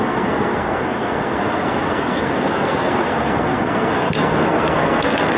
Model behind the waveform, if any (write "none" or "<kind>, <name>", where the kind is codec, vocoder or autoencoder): codec, SNAC